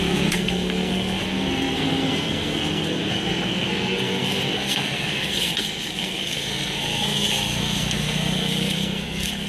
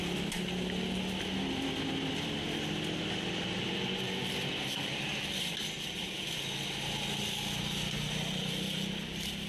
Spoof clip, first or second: first